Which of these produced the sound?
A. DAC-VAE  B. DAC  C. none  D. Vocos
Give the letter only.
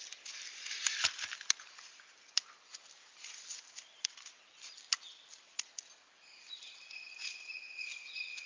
C